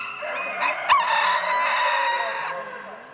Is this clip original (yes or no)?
yes